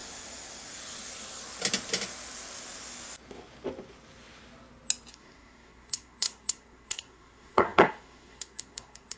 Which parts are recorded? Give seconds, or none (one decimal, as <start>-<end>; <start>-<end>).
0.0-5.1